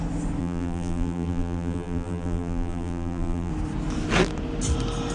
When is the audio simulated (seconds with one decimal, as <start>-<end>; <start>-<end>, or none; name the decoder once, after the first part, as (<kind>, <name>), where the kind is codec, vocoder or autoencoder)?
0.4-3.5 (vocoder, BigVGAN v2)